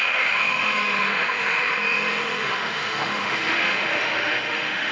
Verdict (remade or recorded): remade